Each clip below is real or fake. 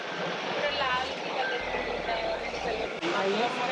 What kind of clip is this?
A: real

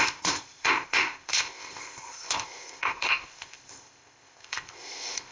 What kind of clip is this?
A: fake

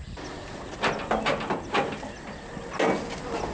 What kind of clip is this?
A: real